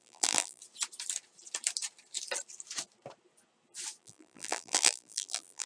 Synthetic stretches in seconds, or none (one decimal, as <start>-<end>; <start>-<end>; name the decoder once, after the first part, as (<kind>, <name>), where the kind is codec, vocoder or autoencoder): 0.0-0.6 (vocoder, BigVGAN v2); 4.0-5.7

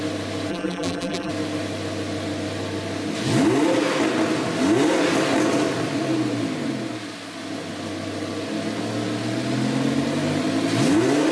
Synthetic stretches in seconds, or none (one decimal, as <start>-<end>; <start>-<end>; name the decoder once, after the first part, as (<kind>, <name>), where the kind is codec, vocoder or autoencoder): 0.5-1.3 (vocoder, BigVGAN v2)

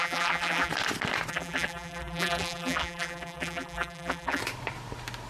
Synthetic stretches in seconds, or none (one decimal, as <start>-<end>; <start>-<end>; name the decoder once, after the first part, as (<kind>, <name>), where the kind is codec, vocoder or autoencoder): 0.0-0.7 (vocoder, BigVGAN v2); 1.3-4.4

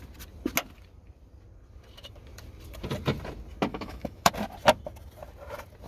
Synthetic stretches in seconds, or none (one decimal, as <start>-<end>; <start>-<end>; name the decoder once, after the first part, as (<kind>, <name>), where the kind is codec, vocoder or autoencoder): 3.7-4.3 (autoencoder, DAC-VAE)

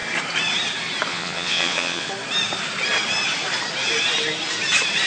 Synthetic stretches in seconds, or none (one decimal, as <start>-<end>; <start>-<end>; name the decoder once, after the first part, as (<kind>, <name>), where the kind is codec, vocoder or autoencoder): 1.1-2.1 (vocoder, Vocos)

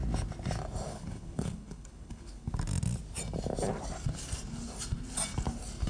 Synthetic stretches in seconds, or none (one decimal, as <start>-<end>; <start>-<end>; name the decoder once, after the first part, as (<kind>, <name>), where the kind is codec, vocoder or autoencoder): 0.9-2.5 (codec, HILCodec)